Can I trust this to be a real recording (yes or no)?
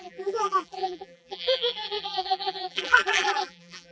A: no